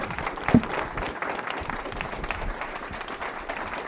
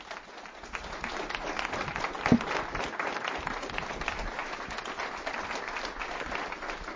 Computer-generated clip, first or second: first